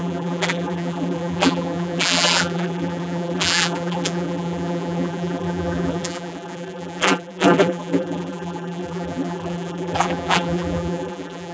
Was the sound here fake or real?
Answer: fake